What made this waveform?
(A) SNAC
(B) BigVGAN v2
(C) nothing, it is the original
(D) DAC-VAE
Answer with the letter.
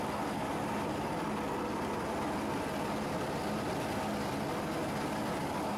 C